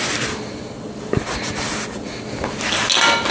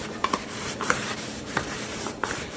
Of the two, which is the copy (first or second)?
second